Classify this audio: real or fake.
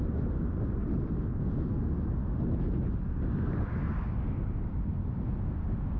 real